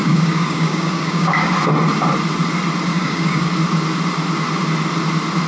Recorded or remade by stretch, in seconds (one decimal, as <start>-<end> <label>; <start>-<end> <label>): 0.0-1.5 remade; 1.5-2.9 recorded; 2.9-3.5 remade; 3.5-5.5 recorded